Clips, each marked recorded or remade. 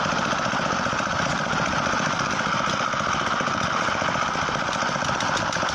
recorded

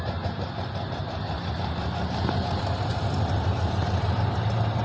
remade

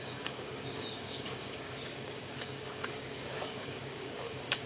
remade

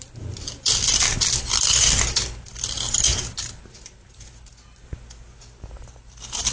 recorded